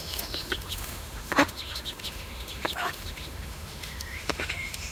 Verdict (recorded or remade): remade